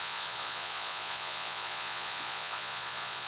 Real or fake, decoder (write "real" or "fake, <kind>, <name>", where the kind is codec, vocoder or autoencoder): fake, vocoder, Vocos